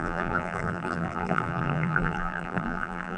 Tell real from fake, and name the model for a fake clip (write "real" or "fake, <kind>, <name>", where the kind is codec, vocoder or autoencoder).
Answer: fake, vocoder, BigVGAN v2